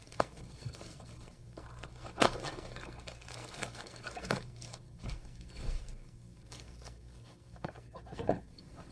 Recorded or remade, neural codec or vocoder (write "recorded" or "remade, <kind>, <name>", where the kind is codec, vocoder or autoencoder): remade, codec, SNAC